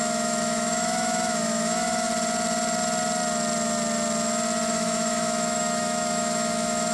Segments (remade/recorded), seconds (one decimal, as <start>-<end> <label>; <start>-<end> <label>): 0.0-2.1 remade; 2.1-4.7 recorded; 4.7-6.9 remade